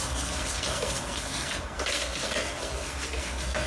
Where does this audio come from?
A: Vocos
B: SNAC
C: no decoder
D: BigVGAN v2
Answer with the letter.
B